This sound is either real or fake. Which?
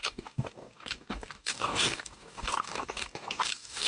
fake